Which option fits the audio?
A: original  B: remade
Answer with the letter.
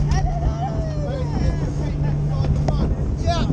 A